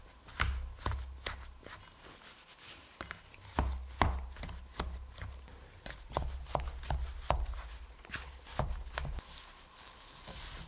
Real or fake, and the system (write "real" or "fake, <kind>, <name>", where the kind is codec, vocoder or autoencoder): real